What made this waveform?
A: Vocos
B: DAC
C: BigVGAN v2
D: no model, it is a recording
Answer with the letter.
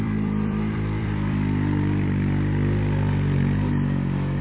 C